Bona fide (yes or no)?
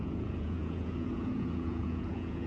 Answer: no